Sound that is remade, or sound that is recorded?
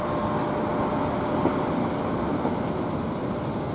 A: recorded